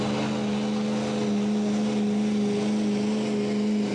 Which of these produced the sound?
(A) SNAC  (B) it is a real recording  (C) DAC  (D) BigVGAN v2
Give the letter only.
B